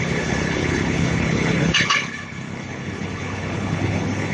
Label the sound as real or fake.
fake